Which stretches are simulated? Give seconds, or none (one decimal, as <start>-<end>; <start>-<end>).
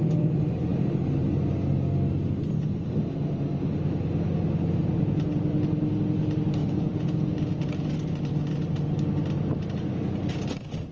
6.6-7.8